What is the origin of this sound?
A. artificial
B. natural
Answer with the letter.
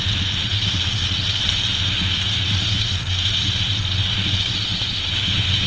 B